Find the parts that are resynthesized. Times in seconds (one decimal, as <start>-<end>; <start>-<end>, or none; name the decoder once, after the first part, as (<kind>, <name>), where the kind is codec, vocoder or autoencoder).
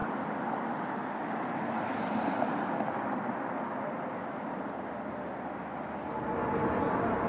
0.0-0.7 (vocoder, BigVGAN v2); 1.2-5.6